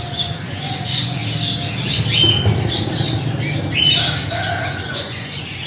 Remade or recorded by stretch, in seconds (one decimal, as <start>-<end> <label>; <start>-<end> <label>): 0.0-1.2 remade; 1.2-4.6 recorded; 4.6-5.7 remade